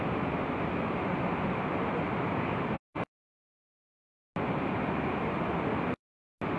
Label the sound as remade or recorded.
recorded